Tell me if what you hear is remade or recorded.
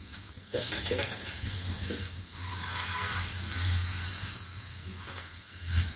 remade